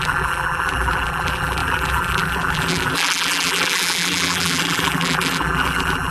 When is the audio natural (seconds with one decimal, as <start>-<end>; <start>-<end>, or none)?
none